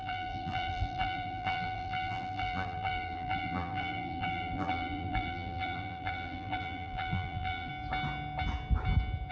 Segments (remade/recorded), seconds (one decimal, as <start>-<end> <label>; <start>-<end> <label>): 0.0-7.7 remade; 7.7-9.3 recorded